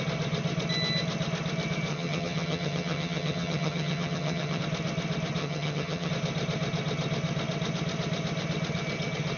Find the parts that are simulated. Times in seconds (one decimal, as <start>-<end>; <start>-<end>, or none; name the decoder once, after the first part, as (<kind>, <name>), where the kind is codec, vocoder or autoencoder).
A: 1.9-4.6 (vocoder, HiFi-GAN); 5.4-6.1